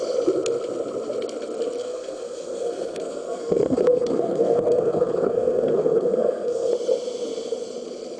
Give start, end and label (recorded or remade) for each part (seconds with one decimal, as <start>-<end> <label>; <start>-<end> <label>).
0.0-1.8 recorded; 1.8-6.7 remade; 6.7-8.2 recorded